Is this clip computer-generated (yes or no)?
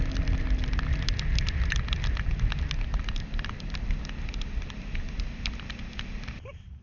no